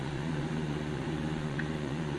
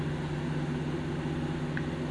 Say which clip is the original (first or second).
second